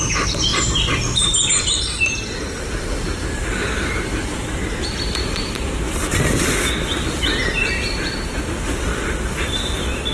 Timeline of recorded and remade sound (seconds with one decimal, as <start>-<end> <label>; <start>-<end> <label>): 0.0-0.5 recorded; 0.5-5.8 remade; 5.8-10.1 recorded